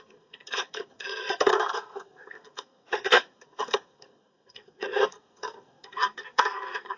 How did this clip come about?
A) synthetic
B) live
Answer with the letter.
A